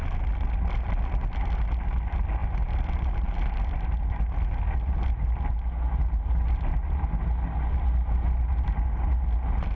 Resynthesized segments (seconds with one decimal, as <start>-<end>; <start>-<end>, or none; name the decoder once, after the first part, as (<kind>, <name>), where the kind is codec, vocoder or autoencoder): none